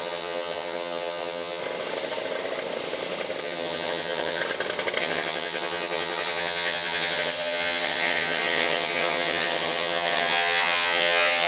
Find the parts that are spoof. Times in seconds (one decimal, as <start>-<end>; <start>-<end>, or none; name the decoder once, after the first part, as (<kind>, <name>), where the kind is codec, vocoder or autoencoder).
0.0-1.6 (vocoder, HiFi-GAN); 3.4-4.4; 5.0-11.5